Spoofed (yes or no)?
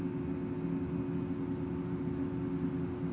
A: no